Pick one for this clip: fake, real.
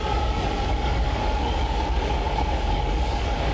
fake